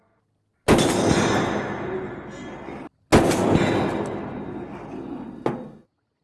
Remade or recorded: recorded